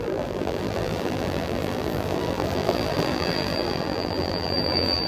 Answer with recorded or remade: remade